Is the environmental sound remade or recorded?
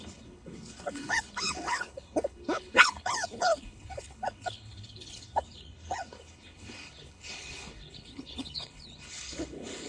remade